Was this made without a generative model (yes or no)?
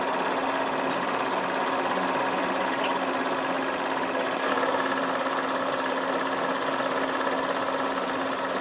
yes